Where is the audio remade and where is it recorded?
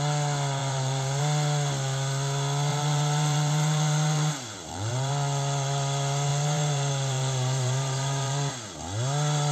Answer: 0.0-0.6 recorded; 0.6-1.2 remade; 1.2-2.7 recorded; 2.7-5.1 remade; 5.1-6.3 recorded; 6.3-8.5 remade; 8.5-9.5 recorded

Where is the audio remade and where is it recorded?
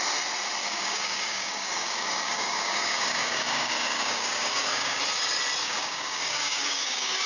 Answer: 0.0-0.6 recorded; 0.6-5.0 remade; 5.0-5.6 recorded; 5.6-7.3 remade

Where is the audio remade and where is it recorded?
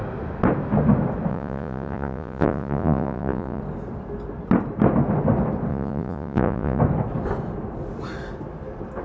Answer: 0.0-1.3 recorded; 1.3-3.6 remade; 3.6-5.7 recorded; 5.7-6.8 remade; 6.8-9.0 recorded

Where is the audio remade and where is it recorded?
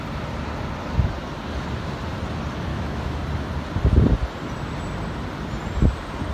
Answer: 0.0-2.7 recorded; 2.7-3.2 remade; 3.2-6.3 recorded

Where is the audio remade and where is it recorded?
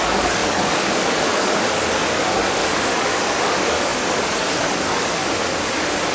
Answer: 0.0-5.2 remade; 5.2-6.1 recorded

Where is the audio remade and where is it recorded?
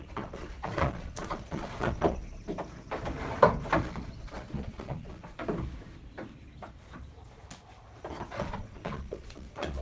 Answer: 0.0-2.2 remade; 2.2-3.8 recorded; 3.8-5.4 remade; 5.4-8.3 recorded; 8.3-9.8 remade